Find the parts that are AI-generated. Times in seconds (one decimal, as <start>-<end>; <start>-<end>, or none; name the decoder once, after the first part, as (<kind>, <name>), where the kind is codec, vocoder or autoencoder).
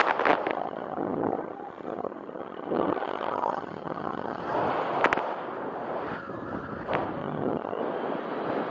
0.5-4.4 (vocoder, HiFi-GAN); 7.2-7.8